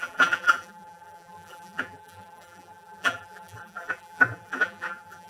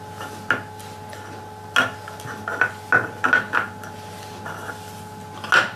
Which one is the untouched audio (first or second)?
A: second